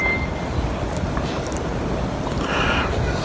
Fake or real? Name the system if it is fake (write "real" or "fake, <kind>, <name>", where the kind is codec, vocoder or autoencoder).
real